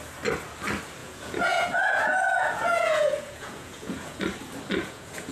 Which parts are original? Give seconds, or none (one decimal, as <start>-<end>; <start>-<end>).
0.0-1.0; 4.2-4.8